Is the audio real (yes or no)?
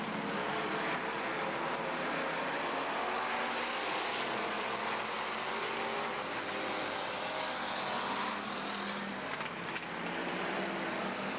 yes